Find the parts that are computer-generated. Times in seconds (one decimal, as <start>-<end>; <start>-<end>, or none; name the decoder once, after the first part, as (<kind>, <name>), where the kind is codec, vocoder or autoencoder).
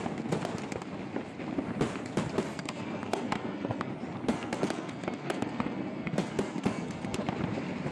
2.5-3.9 (codec, SNAC); 4.3-7.2